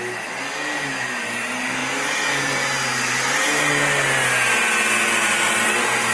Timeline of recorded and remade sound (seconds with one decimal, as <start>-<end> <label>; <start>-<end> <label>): 0.0-6.1 recorded